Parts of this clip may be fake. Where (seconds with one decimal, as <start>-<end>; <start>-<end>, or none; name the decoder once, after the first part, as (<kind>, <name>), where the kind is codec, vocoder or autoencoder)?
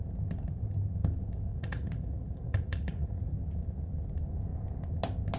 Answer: 1.5-3.2 (vocoder, Vocos)